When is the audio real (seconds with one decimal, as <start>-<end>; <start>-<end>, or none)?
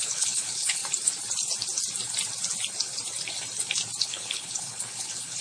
0.8-4.0